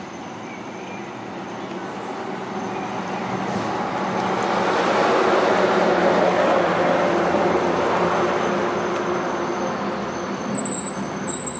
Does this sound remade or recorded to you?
recorded